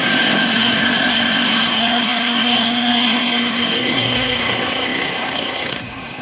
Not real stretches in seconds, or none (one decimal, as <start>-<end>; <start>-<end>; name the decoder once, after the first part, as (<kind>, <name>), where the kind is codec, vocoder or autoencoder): 0.0-6.2 (codec, SNAC)